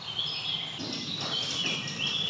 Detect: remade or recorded recorded